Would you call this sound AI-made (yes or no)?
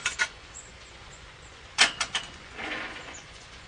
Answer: yes